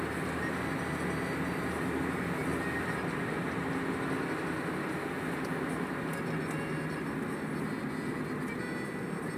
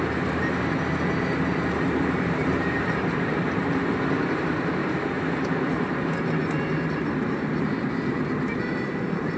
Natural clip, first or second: first